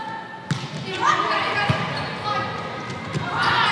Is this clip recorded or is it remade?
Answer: recorded